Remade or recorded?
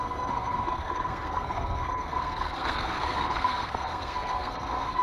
remade